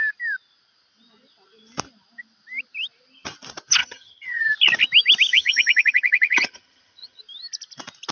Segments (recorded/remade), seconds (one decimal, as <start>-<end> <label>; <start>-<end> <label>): 0.0-3.8 recorded; 3.8-4.4 remade; 4.4-5.3 recorded; 5.3-7.2 remade; 7.2-8.1 recorded